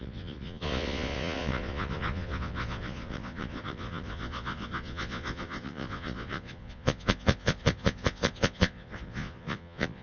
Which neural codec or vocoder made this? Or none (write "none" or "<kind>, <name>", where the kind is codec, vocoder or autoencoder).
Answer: vocoder, Vocos